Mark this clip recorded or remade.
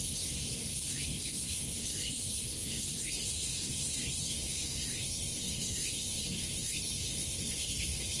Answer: remade